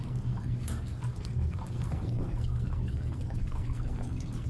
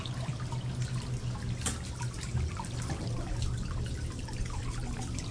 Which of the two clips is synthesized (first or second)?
first